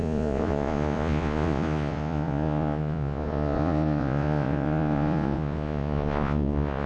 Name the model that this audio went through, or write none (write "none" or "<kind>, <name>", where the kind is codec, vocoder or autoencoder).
vocoder, Vocos